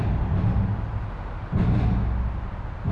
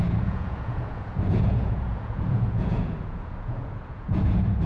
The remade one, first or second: second